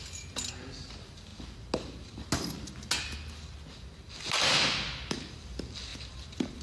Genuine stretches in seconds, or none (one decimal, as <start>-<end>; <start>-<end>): 0.0-5.9